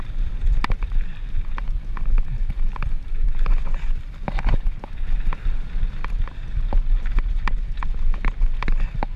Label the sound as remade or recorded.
recorded